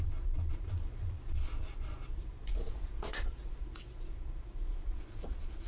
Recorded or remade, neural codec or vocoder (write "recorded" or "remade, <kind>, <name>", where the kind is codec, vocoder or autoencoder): remade, vocoder, Vocos